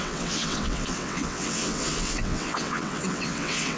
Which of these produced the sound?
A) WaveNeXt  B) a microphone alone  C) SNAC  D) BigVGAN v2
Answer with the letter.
A